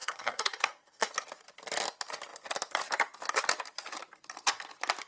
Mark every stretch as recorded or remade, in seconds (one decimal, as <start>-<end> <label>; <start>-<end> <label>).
0.0-1.1 remade; 1.1-5.1 recorded